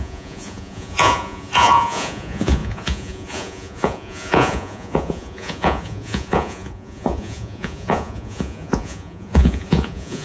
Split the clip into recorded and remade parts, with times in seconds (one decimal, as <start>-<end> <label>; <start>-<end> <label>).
0.0-10.2 remade